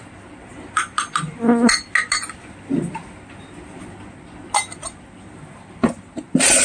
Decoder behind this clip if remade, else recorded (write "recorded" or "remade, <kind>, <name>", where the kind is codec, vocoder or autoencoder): recorded